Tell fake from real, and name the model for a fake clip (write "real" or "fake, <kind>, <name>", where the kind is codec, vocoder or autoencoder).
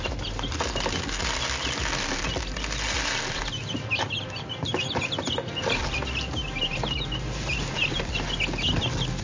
real